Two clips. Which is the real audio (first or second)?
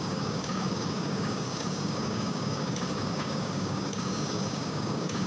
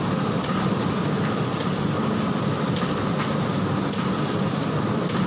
second